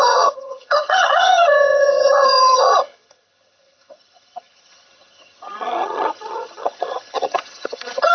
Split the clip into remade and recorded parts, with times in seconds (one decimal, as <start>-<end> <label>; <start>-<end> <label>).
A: 0.0-8.1 remade